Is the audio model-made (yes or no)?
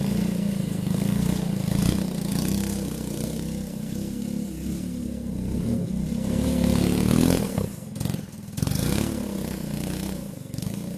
yes